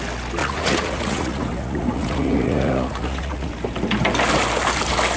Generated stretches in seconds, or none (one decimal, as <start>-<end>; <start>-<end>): 0.4-3.5